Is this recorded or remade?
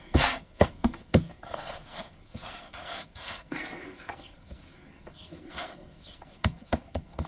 remade